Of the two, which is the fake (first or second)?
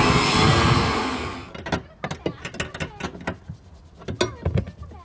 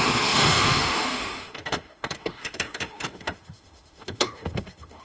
second